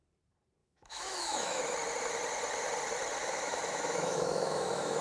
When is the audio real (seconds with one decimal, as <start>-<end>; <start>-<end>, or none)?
0.0-0.6; 1.6-3.2